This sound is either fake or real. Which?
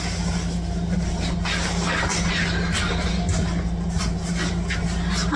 real